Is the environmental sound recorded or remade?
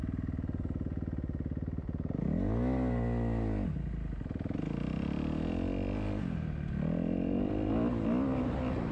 recorded